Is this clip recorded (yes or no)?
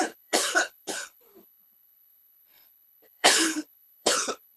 no